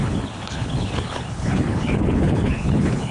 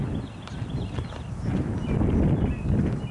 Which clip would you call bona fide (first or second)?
second